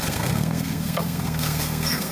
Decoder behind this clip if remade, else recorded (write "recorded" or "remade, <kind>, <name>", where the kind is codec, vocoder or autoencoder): remade, codec, SNAC